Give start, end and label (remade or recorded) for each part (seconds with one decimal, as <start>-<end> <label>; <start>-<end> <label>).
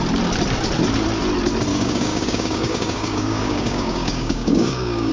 0.0-1.7 recorded; 1.7-5.1 remade